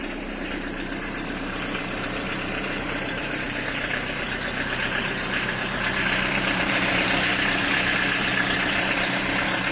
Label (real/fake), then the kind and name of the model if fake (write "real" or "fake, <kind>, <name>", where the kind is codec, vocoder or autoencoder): fake, vocoder, BigVGAN v2